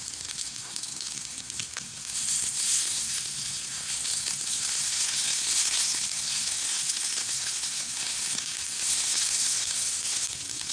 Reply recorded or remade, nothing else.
remade